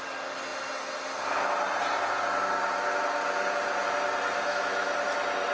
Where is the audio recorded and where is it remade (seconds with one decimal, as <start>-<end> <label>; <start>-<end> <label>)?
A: 0.0-5.5 recorded